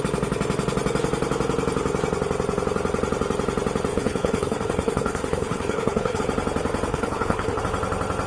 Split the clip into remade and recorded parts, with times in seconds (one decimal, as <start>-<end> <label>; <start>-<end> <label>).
0.0-3.9 recorded; 3.9-6.2 remade; 6.2-6.9 recorded; 6.9-7.6 remade; 7.6-8.3 recorded